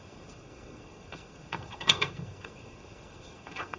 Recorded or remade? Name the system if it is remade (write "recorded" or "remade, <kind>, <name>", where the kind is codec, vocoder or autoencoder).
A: remade, codec, SNAC